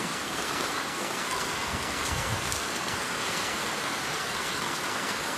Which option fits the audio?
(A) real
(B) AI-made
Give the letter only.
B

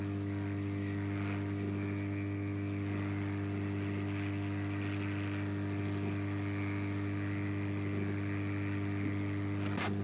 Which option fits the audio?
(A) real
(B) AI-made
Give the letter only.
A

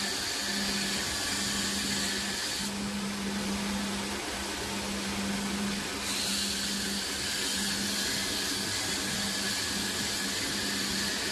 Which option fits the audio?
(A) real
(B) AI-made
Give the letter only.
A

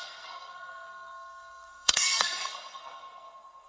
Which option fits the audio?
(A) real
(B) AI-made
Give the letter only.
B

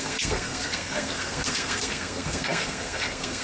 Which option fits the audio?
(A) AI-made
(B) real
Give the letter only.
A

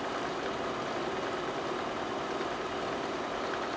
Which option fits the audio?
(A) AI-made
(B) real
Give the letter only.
B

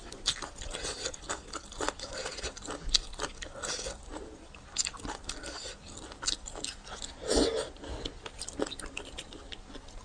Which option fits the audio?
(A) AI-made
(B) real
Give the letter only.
B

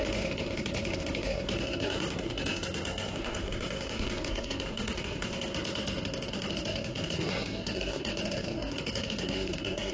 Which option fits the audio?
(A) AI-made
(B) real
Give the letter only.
A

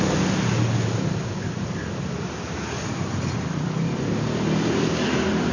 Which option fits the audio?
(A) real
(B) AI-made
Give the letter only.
A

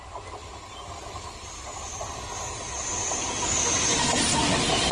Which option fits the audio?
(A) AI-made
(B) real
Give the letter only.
B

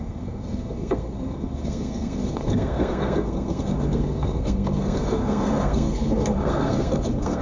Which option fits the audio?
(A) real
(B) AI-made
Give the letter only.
B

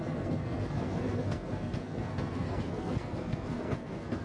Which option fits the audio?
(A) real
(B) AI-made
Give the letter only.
B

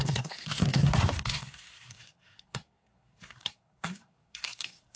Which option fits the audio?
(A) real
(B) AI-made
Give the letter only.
B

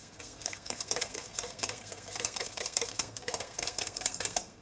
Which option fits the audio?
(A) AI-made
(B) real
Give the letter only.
A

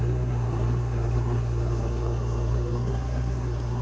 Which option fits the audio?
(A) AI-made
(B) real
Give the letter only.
A